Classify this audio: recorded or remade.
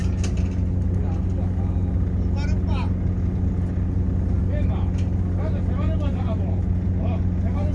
recorded